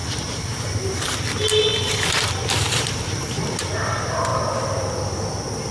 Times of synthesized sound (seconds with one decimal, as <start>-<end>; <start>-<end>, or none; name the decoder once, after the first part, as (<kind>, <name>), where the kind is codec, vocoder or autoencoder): 0.0-1.2 (vocoder, BigVGAN v2); 1.7-3.7